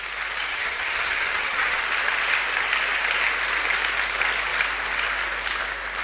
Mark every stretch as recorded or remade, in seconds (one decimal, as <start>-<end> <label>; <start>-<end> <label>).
0.0-0.5 recorded; 0.5-1.8 remade; 1.8-6.0 recorded

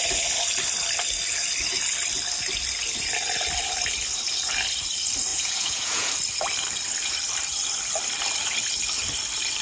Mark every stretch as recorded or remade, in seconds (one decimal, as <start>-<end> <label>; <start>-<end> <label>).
0.0-5.3 recorded; 5.3-6.1 remade; 6.1-9.6 recorded

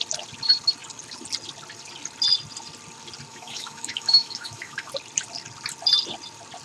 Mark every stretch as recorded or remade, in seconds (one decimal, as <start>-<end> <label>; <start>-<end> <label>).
0.0-3.3 recorded; 3.3-4.9 remade; 4.9-6.6 recorded